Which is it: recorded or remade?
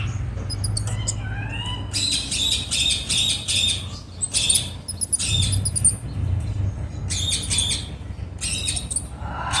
recorded